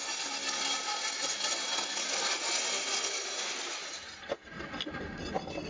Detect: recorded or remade recorded